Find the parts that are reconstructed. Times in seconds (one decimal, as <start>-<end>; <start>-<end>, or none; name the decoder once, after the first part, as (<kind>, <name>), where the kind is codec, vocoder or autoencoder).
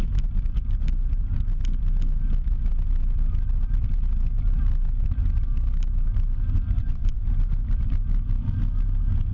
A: 6.8-7.3 (vocoder, Vocos)